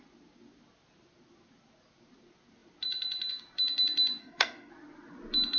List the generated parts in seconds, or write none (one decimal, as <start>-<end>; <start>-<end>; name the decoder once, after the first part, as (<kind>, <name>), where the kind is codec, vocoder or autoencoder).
4.2-4.7 (codec, SNAC)